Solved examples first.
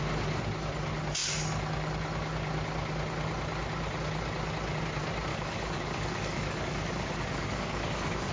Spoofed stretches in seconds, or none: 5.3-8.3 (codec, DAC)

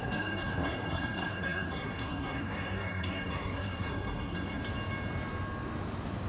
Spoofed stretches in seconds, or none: 0.0-4.6 (codec, SNAC)

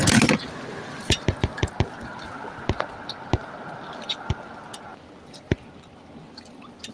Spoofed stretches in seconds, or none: none

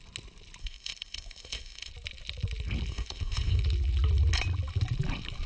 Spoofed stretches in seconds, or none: 0.6-1.9 (codec, ZipCodec); 2.9-3.6

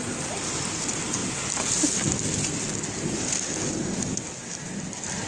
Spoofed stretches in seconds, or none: none

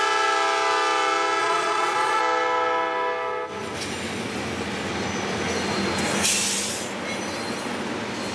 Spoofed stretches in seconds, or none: 1.4-2.2 (vocoder, Vocos)